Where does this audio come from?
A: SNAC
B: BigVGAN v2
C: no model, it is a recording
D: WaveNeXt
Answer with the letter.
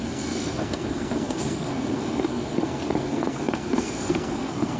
A